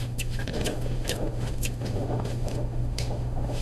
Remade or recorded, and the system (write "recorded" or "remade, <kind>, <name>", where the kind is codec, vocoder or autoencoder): remade, autoencoder, DAC-VAE